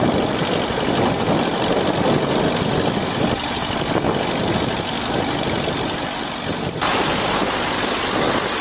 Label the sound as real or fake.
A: real